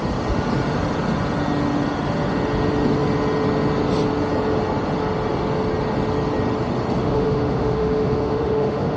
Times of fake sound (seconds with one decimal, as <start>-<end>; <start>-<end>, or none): 7.0-9.0

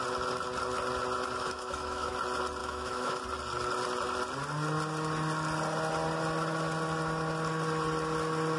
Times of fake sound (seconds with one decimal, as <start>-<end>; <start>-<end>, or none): 1.4-2.1; 2.6-3.2

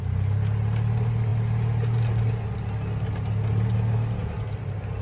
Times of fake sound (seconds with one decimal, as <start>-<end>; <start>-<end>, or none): none